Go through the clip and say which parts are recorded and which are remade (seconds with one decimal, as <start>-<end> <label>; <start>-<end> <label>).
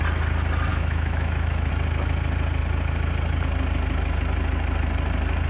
0.0-0.7 recorded; 0.7-1.7 remade; 1.7-5.5 recorded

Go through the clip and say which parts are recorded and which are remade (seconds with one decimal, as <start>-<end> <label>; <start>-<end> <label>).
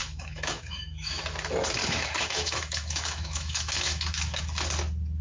0.0-1.2 remade; 1.2-1.8 recorded; 1.8-4.4 remade; 4.4-5.2 recorded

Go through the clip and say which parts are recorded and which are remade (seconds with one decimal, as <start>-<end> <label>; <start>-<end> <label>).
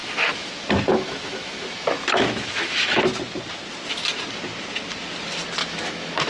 0.0-0.5 remade; 0.5-0.9 recorded; 0.9-3.0 remade; 3.0-5.6 recorded; 5.6-6.3 remade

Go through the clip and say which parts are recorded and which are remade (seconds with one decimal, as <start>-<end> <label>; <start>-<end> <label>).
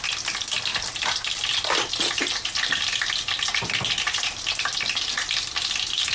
0.0-6.1 recorded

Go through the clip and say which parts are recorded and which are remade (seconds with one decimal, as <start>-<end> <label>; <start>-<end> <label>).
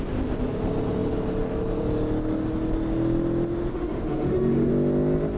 0.0-3.7 recorded; 3.7-4.7 remade; 4.7-5.4 recorded